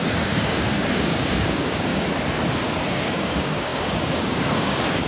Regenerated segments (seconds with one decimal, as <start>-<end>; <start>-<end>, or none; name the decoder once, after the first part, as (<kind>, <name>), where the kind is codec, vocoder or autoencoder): 0.0-1.9 (codec, DAC); 2.9-5.1